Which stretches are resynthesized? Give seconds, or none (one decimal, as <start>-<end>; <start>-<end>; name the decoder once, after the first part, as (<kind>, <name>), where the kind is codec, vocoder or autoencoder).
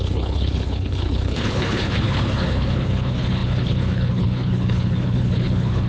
0.0-5.9 (codec, HILCodec)